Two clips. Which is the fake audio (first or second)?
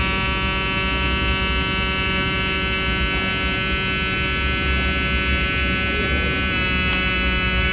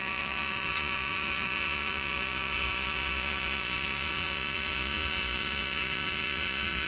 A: second